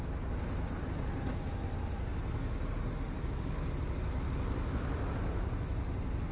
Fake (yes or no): no